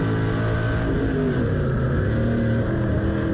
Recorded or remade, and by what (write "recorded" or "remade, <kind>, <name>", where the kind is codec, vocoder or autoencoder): recorded